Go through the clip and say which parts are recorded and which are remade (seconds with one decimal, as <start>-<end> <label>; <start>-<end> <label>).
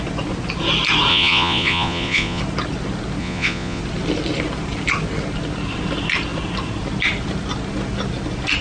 0.0-1.1 recorded; 1.1-2.4 remade; 2.4-3.2 recorded; 3.2-3.8 remade; 3.8-8.6 recorded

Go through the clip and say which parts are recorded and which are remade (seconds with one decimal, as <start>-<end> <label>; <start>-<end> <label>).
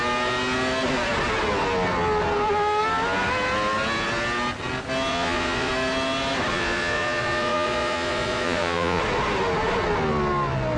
0.0-5.1 recorded; 5.1-5.7 remade; 5.7-6.5 recorded; 6.5-9.0 remade; 9.0-10.8 recorded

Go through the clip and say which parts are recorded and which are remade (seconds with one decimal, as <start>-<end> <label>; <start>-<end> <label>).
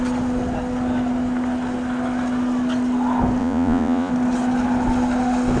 0.0-3.4 recorded; 3.4-4.1 remade; 4.1-5.6 recorded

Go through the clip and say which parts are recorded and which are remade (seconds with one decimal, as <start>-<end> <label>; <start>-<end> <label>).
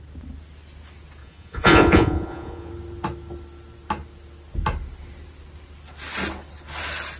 0.0-1.2 recorded; 1.2-2.7 remade; 2.7-7.2 recorded